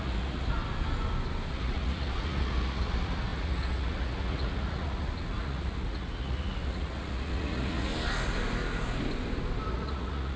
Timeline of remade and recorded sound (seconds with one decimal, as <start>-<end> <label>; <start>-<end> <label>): 0.0-0.6 remade; 0.6-1.5 recorded; 1.5-7.9 remade; 7.9-9.7 recorded; 9.7-10.4 remade